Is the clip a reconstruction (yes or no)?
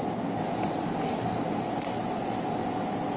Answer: no